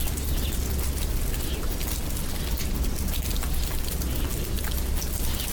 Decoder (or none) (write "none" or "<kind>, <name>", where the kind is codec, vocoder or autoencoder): none